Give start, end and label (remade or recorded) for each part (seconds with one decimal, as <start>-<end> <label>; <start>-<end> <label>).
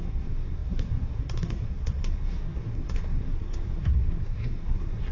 0.0-5.1 remade